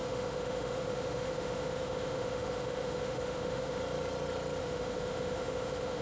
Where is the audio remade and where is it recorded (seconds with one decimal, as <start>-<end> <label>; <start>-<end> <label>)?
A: 0.0-3.8 remade; 3.8-4.6 recorded; 4.6-6.0 remade